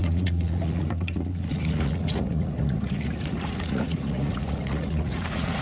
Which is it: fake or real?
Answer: fake